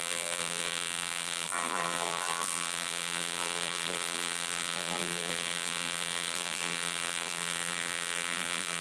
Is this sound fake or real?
fake